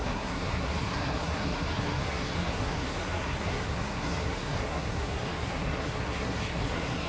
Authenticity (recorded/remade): remade